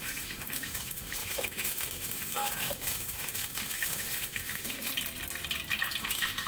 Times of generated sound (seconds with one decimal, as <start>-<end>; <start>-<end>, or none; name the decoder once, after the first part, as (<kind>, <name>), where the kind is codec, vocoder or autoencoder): 0.0-4.9 (autoencoder, DAC-VAE); 6.0-6.5